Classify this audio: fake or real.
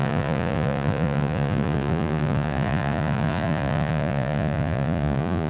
fake